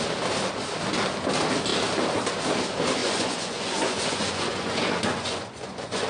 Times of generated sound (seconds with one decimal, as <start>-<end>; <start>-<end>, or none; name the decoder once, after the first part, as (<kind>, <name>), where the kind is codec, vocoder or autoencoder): 3.0-6.1 (vocoder, Vocos)